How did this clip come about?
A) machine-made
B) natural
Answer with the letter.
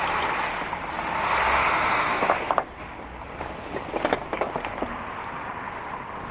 B